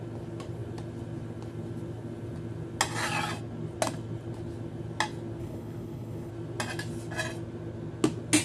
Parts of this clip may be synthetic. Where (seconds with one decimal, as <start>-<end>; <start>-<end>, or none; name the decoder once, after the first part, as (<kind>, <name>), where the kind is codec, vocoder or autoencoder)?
5.4-6.3 (codec, HILCodec)